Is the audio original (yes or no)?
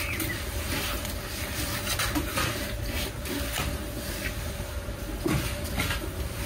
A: yes